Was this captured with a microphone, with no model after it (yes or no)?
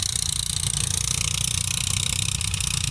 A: yes